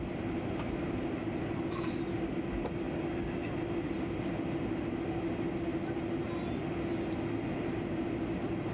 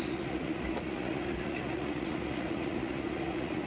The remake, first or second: second